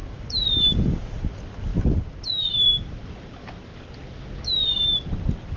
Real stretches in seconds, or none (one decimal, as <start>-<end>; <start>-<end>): 0.0-5.6